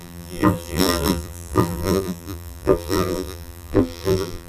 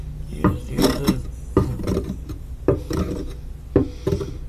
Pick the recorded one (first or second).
second